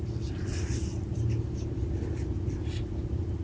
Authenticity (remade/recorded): recorded